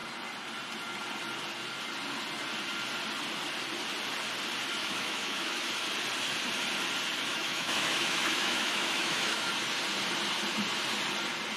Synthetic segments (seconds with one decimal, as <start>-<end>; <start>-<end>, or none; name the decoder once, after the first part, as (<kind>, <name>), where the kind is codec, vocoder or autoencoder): 4.8-5.7 (autoencoder, DAC-VAE); 7.3-9.5